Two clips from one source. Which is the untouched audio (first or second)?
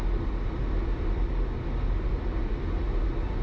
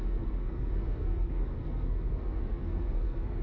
first